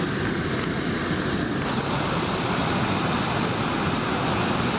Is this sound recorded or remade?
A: recorded